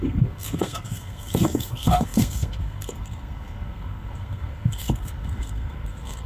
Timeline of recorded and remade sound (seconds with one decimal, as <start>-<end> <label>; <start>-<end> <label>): 0.0-6.3 remade